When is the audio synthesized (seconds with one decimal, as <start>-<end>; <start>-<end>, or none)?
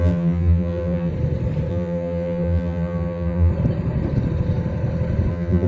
0.0-1.1; 1.7-3.5; 5.3-5.7